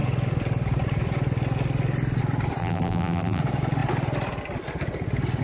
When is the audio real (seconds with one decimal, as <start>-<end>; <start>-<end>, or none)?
0.0-2.6; 3.4-5.4